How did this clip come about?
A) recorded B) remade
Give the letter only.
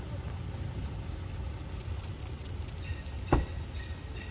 A